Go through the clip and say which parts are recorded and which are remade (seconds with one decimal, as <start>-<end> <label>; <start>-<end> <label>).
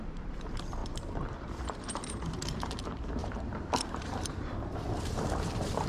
0.0-5.9 remade